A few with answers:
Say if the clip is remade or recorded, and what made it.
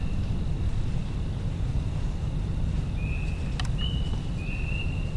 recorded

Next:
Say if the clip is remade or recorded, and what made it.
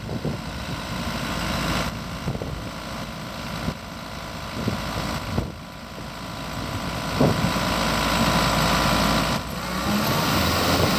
recorded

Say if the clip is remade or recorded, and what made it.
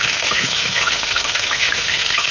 remade, autoencoder, DAC-VAE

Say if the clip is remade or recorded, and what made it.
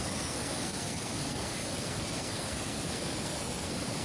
remade, codec, SNAC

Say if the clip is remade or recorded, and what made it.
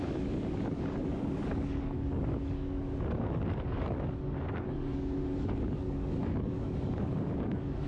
remade, codec, DAC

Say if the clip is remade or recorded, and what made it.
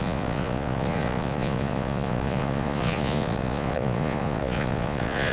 remade, vocoder, Vocos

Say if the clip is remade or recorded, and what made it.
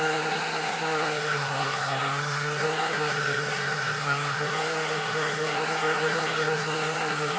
remade, codec, SNAC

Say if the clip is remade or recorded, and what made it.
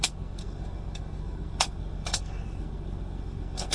remade, codec, SNAC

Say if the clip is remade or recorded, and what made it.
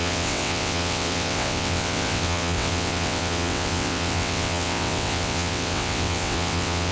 remade, vocoder, WaveNeXt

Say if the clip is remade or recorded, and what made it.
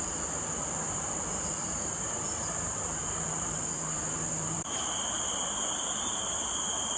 remade, vocoder, BigVGAN v2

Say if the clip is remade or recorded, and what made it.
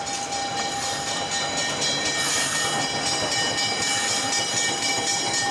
recorded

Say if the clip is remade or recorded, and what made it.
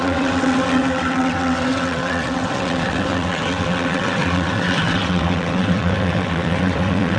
remade, vocoder, WaveNeXt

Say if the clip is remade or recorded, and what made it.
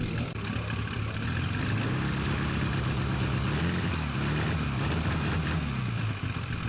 recorded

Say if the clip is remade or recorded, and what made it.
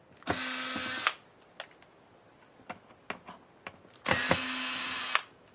recorded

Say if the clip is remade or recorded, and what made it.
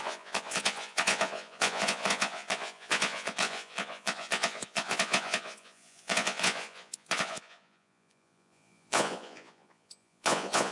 remade, vocoder, Vocos